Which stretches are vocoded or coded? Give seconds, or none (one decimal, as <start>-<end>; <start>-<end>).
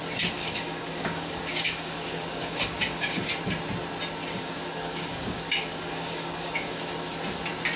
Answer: 0.4-3.4; 4.2-6.9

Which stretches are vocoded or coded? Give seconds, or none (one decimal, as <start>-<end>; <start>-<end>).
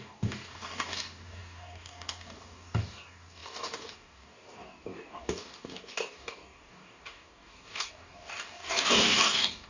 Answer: 0.0-9.7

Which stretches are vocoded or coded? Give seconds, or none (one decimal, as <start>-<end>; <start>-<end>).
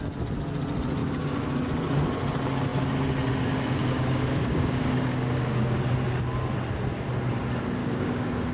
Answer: 1.0-1.7; 3.8-5.8; 7.8-8.5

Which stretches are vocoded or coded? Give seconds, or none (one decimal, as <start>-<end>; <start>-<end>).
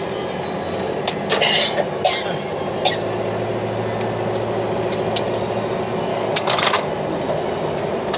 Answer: 6.1-6.9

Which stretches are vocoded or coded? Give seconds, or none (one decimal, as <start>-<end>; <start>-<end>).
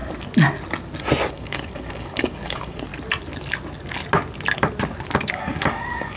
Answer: 1.3-2.9; 5.3-6.2